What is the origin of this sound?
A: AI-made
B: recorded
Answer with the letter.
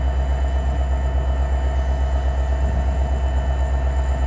B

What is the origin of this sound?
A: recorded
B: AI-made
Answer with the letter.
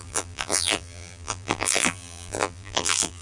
B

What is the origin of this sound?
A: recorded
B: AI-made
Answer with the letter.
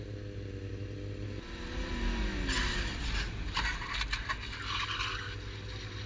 A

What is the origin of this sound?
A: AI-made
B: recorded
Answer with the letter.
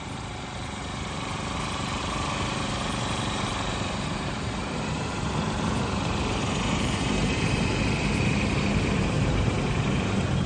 A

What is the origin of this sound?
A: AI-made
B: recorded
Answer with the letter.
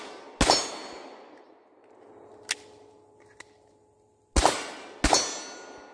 B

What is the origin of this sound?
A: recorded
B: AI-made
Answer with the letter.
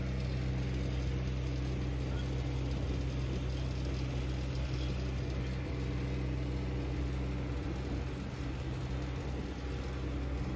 A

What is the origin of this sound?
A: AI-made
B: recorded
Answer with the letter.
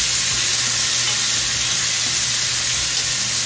B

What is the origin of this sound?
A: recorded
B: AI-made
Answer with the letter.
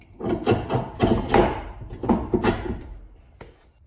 A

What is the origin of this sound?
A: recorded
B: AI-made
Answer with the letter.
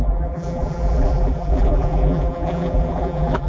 B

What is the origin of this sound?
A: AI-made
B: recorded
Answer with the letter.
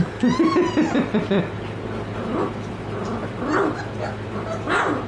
B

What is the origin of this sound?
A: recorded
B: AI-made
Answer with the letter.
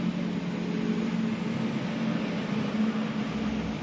A